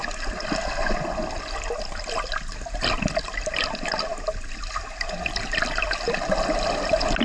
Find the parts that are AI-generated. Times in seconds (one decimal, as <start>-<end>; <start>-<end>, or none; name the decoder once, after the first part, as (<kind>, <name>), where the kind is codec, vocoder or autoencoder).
none